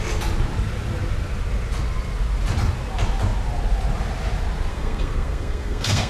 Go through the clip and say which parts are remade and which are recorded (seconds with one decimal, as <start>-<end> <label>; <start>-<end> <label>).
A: 0.0-4.7 recorded; 4.7-6.1 remade